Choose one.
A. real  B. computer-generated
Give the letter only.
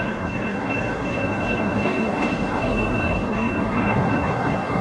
B